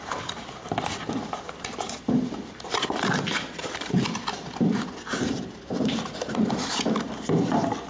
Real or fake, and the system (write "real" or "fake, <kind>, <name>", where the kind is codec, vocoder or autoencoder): fake, vocoder, BigVGAN v2